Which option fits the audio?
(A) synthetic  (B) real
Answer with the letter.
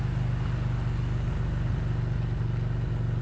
B